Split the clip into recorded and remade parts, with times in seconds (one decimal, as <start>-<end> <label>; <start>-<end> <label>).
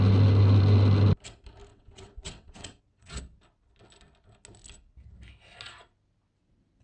0.0-1.7 recorded; 1.7-3.2 remade; 3.2-6.8 recorded